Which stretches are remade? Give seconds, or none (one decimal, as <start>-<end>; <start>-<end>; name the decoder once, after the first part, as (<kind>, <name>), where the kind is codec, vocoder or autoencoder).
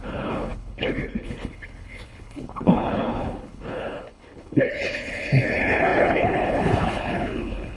0.0-7.8 (codec, HILCodec)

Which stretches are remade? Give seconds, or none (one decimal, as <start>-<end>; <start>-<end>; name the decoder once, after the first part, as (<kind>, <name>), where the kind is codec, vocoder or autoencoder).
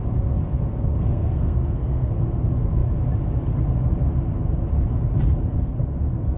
0.9-2.1 (codec, SNAC)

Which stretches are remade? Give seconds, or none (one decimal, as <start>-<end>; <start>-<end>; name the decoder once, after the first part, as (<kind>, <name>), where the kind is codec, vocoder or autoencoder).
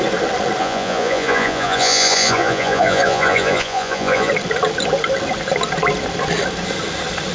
0.6-4.3 (vocoder, Vocos)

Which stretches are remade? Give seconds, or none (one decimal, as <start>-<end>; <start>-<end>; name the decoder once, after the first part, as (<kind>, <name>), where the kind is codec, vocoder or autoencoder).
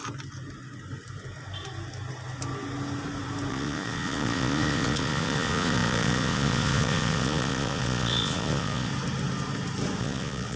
3.5-8.9 (vocoder, Vocos); 10.0-10.6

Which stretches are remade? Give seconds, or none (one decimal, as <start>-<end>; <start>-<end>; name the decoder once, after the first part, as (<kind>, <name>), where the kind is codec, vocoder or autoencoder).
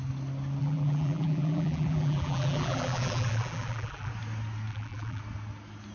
0.6-4.1 (vocoder, BigVGAN v2); 4.7-5.2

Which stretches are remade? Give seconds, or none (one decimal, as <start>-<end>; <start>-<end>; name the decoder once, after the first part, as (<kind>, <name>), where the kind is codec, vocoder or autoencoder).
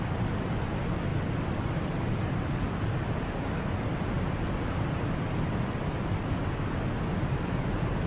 none